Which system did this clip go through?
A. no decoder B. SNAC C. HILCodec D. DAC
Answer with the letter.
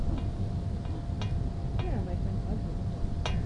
A